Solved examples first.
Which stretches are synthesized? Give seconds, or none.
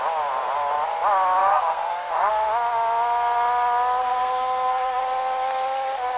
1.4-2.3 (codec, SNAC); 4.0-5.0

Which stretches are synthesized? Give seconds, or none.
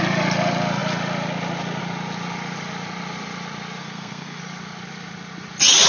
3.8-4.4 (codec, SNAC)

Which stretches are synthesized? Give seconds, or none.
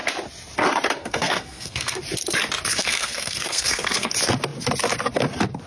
1.0-2.0 (codec, SNAC); 2.7-4.1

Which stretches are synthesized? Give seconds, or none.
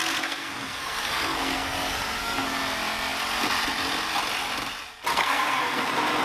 0.0-2.6 (codec, SNAC); 5.1-5.8